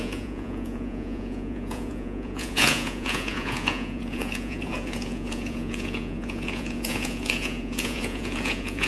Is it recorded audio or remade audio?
remade